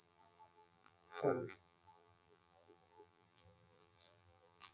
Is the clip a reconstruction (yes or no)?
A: yes